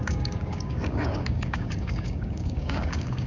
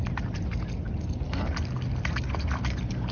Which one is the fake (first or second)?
first